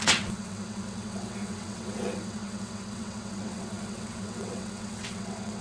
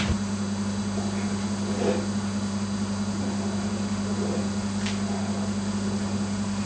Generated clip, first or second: first